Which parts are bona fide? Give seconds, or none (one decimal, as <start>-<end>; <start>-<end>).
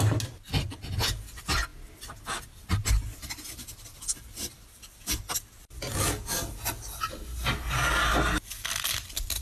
0.0-9.4